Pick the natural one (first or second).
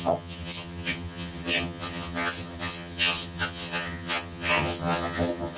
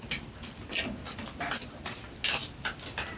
second